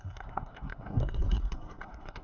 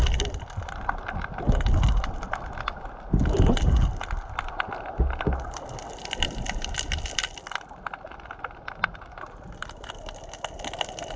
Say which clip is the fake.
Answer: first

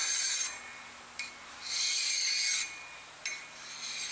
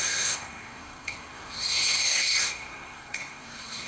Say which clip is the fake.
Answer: second